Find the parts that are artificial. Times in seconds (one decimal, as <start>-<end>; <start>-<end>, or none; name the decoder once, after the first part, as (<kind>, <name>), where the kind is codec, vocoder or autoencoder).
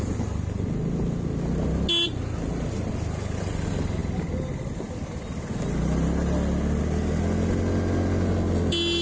none